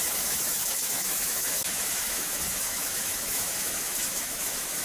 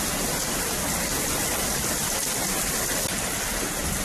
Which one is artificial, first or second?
first